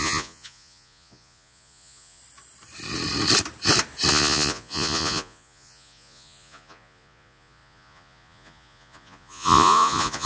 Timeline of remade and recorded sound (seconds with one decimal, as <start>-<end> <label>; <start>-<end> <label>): 0.0-2.2 remade; 2.2-4.1 recorded; 4.1-10.3 remade